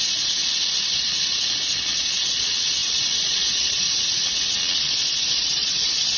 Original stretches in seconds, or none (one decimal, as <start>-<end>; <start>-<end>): 0.4-0.9